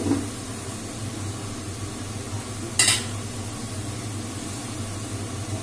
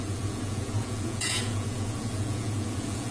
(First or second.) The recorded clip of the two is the first